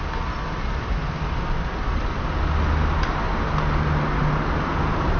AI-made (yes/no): no